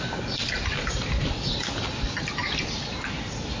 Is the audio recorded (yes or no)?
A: yes